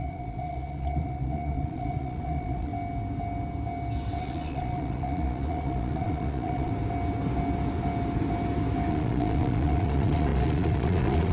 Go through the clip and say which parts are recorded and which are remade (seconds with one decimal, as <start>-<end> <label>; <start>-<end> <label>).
0.0-2.7 remade; 2.7-4.2 recorded; 4.2-6.7 remade; 6.7-8.9 recorded; 8.9-11.3 remade